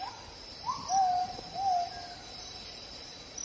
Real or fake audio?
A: real